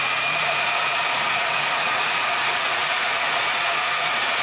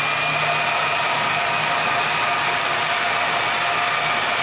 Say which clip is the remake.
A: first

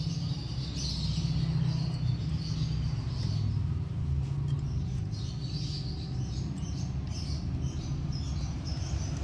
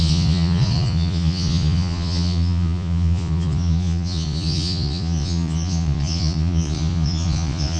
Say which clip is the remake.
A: second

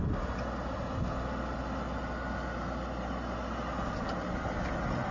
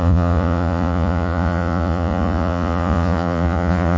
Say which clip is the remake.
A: second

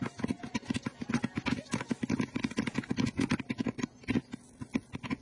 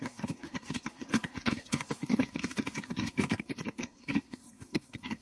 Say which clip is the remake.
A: second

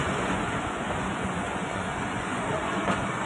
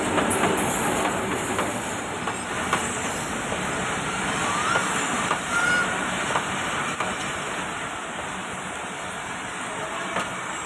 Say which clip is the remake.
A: first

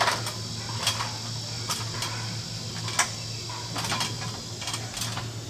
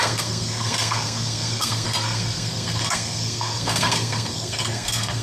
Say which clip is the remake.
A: second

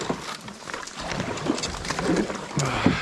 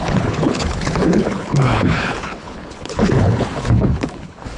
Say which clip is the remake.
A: second